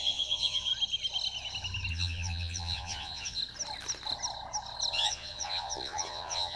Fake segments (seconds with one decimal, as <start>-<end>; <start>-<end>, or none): 0.0-0.7; 1.9-3.4; 4.9-6.6